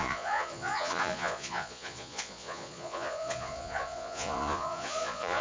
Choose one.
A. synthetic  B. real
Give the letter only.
A